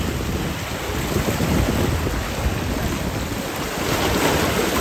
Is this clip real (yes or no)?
yes